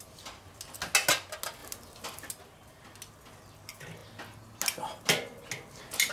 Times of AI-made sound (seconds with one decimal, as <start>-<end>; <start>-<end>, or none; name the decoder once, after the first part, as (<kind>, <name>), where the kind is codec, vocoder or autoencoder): none

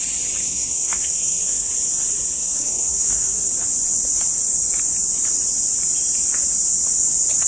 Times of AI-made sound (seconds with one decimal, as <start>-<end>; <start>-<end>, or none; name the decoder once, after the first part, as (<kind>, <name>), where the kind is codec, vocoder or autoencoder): 0.4-1.7 (codec, SNAC); 2.4-3.5

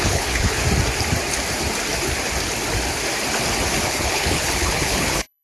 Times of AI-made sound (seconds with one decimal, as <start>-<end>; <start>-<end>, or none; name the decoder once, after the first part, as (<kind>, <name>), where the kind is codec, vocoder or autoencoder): 0.0-0.6 (codec, HILCodec); 3.8-5.4

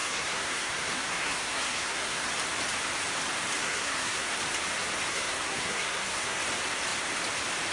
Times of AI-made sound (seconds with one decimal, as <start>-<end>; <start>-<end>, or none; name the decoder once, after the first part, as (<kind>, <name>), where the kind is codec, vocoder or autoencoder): 0.0-2.3 (codec, SNAC); 3.6-4.3; 5.1-6.4

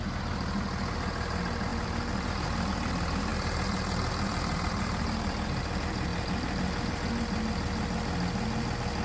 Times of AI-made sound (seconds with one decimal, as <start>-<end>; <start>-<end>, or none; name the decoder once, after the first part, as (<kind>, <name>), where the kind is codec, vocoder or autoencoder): 1.7-2.8 (vocoder, BigVGAN v2); 3.3-5.6; 6.1-7.0

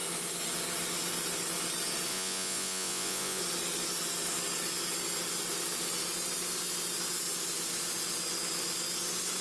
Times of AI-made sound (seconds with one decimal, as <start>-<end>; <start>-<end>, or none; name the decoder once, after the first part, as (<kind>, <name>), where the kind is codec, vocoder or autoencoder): 2.1-3.4 (vocoder, Vocos)

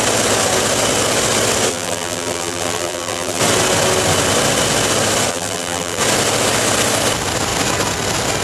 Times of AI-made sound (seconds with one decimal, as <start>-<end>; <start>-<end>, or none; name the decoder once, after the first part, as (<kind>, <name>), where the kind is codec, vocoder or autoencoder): 1.7-3.4 (vocoder, BigVGAN v2); 5.3-6.0